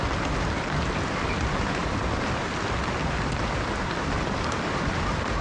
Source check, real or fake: real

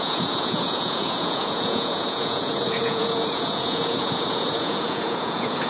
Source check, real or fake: fake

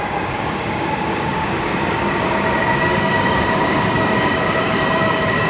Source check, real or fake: fake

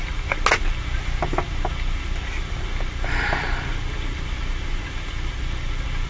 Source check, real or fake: real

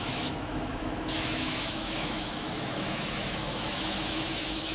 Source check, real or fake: fake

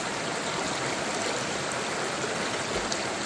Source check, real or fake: real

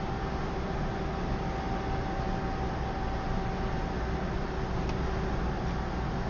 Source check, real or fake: real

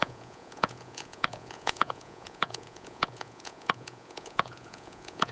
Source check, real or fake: fake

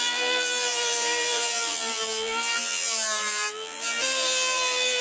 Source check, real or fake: fake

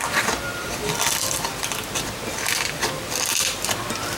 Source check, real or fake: fake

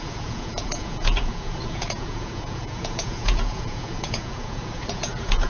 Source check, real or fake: fake